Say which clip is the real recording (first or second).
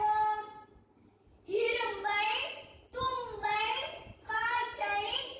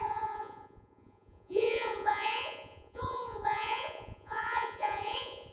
first